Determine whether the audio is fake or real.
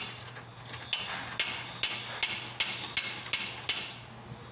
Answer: real